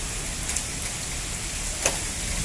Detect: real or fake real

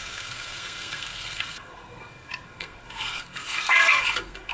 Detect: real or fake fake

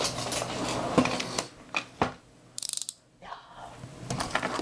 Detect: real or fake real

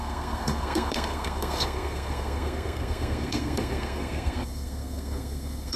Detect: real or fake fake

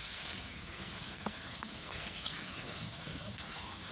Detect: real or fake fake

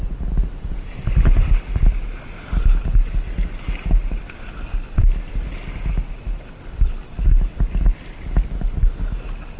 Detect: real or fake real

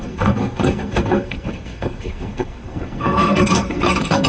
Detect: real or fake fake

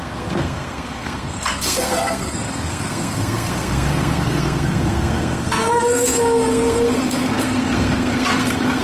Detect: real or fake fake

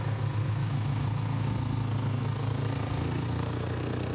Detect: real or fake fake